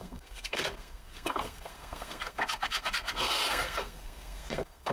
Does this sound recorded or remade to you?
remade